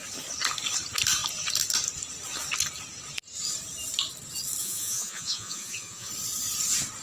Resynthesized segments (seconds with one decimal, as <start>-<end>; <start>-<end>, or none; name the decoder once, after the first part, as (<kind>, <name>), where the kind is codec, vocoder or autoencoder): 4.6-6.1 (vocoder, Vocos)